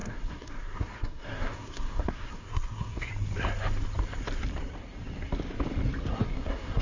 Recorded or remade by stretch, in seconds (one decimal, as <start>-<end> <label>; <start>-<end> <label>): 0.0-3.1 remade; 3.1-6.1 recorded; 6.1-6.8 remade